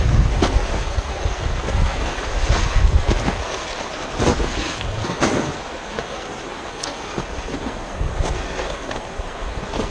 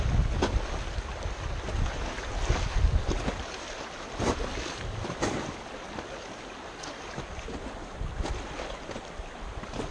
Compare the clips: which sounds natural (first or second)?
second